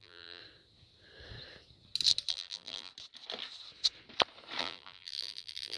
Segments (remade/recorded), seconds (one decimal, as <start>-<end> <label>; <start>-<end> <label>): 0.0-0.4 remade; 0.4-2.3 recorded; 2.3-2.9 remade; 2.9-4.6 recorded; 4.6-5.8 remade